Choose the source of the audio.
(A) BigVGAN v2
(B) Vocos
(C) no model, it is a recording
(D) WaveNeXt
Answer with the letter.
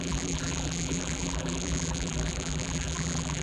A